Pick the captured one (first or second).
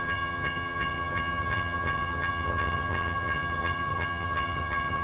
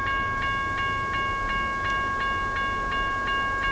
second